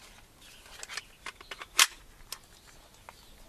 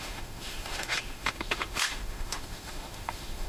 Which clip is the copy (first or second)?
second